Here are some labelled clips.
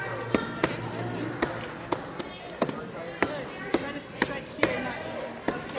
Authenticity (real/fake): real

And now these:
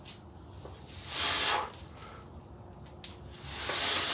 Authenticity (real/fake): real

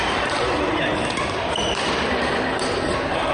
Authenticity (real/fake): fake